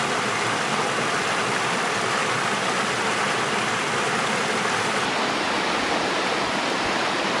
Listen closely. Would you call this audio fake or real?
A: real